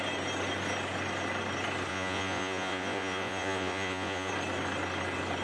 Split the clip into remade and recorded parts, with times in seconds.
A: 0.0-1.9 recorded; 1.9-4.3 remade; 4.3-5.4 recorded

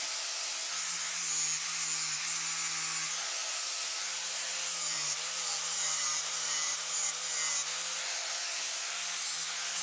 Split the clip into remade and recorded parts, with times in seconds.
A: 0.0-3.4 recorded; 3.4-7.1 remade; 7.1-9.8 recorded

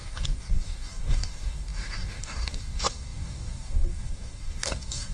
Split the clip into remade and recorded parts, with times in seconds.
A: 0.0-5.1 remade

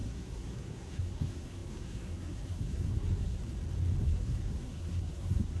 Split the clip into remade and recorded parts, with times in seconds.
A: 0.0-3.4 remade; 3.4-4.0 recorded; 4.0-5.6 remade

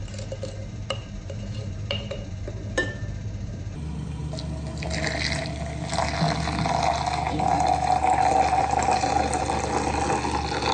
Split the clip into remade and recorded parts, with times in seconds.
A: 0.0-0.6 recorded; 0.6-3.8 remade; 3.8-8.6 recorded; 8.6-9.4 remade; 9.4-10.7 recorded